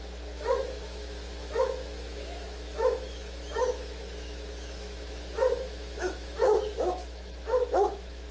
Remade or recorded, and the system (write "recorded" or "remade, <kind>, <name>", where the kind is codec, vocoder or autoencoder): remade, autoencoder, DAC-VAE